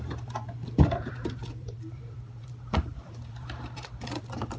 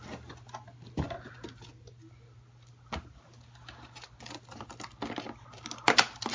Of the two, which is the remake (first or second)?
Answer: first